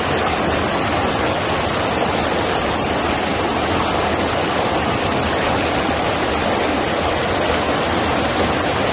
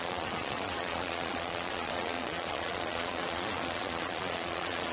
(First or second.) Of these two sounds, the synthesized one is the second